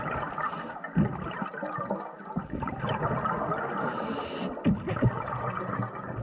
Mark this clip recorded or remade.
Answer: recorded